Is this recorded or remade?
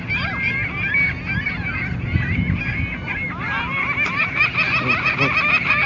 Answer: recorded